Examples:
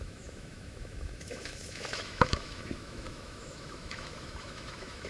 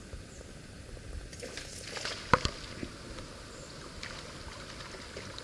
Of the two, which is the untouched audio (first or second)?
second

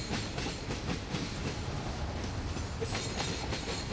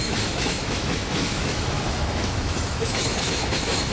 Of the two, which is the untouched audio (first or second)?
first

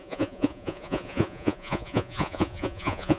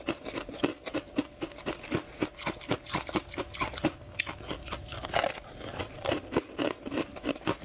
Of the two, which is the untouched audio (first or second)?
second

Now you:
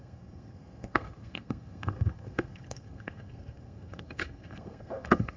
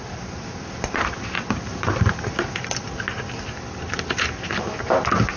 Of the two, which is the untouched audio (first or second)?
second